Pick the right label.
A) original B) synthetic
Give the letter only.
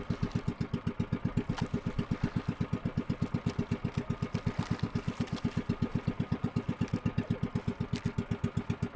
A